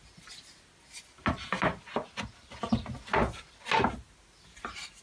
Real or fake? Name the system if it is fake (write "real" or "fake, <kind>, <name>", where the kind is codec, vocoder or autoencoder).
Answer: real